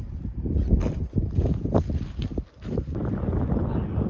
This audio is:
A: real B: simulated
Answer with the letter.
A